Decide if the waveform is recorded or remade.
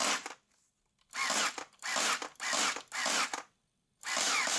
recorded